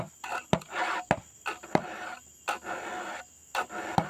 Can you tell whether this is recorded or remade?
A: recorded